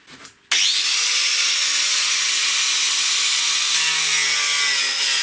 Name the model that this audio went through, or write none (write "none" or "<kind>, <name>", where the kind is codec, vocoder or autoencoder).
none